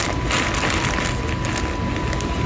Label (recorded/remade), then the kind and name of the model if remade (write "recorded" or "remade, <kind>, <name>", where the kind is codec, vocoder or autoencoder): recorded